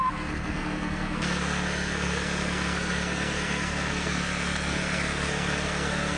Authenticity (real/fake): fake